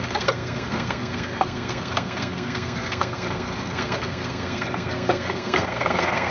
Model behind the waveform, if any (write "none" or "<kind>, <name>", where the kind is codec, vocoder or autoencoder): codec, SNAC